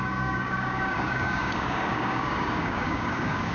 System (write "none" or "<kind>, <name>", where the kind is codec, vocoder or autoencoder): codec, DAC